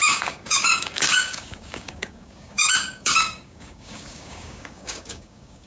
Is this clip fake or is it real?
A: fake